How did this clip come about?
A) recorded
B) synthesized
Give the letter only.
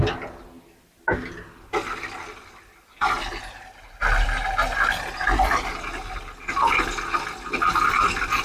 A